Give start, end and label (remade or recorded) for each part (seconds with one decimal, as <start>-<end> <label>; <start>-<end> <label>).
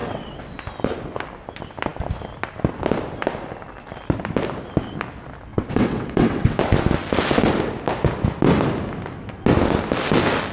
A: 0.0-0.6 remade; 0.6-5.5 recorded; 5.5-6.6 remade; 6.6-10.5 recorded